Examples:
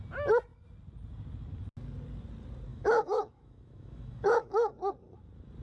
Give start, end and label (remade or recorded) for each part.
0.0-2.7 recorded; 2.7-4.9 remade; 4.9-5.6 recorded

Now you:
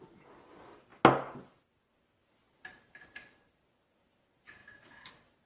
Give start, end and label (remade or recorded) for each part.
0.0-4.6 recorded; 4.6-5.1 remade; 5.1-5.5 recorded

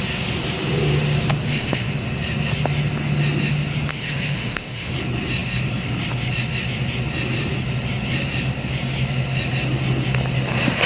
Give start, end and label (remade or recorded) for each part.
0.0-1.3 recorded; 1.3-1.9 remade; 1.9-3.9 recorded; 3.9-4.9 remade; 4.9-10.9 recorded

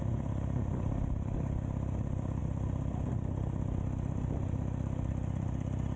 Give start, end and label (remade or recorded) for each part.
0.0-6.0 recorded

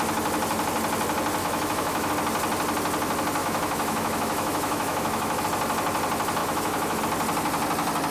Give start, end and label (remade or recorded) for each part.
0.0-1.4 recorded; 1.4-2.1 remade; 2.1-3.4 recorded; 3.4-5.4 remade; 5.4-6.4 recorded; 6.4-7.0 remade; 7.0-8.1 recorded

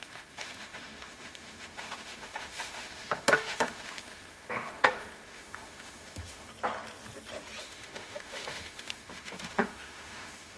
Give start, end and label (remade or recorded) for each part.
0.0-6.5 remade; 6.5-7.6 recorded; 7.6-10.6 remade